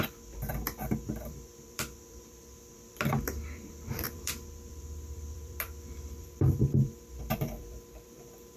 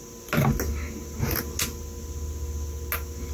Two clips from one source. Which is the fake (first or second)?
first